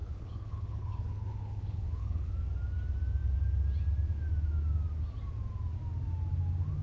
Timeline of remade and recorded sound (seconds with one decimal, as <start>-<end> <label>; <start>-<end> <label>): 0.0-2.3 remade; 2.3-6.8 recorded